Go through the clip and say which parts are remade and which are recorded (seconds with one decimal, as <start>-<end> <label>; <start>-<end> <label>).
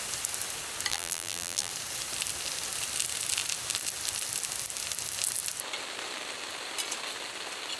0.0-0.9 recorded; 0.9-1.7 remade; 1.7-7.8 recorded